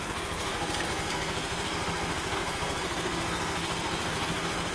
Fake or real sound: fake